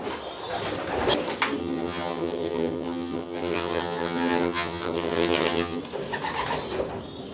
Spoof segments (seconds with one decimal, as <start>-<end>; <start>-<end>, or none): 1.6-5.8